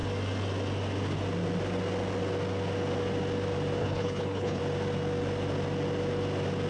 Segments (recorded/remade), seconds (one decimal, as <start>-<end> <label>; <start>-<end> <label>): 0.0-3.8 recorded; 3.8-4.6 remade; 4.6-6.7 recorded